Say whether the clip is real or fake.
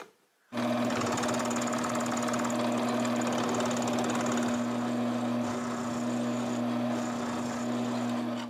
real